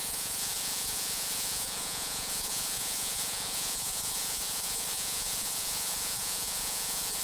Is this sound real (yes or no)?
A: no